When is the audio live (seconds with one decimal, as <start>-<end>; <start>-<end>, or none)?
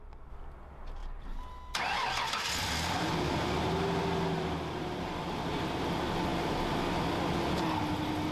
0.0-8.3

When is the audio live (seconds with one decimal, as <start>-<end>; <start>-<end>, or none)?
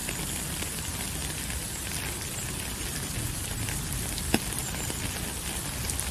0.0-0.6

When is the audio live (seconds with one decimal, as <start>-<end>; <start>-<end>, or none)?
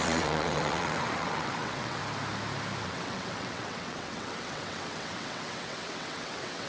2.0-2.8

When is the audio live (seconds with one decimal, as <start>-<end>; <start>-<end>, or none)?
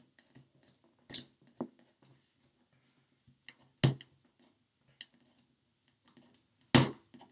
0.0-7.3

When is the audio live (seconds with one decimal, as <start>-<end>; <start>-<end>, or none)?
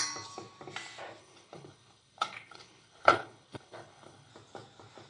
0.0-1.2; 4.3-5.1